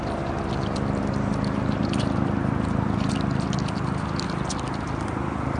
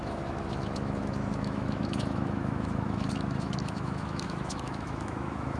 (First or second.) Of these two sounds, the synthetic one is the second